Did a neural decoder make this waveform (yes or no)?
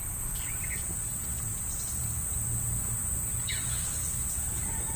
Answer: no